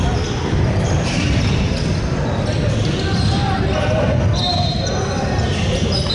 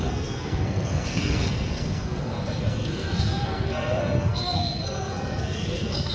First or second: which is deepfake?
second